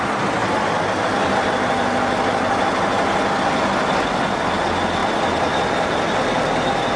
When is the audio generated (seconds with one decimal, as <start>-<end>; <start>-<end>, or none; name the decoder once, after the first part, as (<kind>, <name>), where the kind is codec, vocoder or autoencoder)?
none